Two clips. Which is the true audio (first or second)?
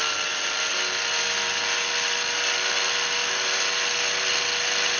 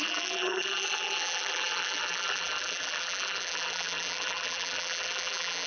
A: first